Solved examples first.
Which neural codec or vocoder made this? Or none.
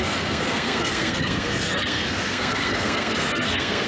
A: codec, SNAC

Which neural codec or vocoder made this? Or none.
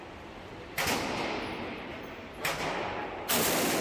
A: vocoder, BigVGAN v2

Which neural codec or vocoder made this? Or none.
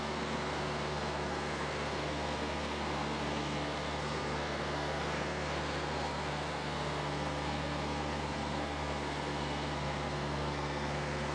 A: codec, SNAC